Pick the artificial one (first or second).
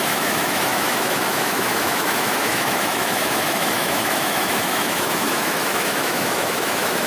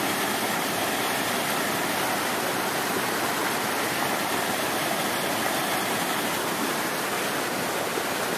first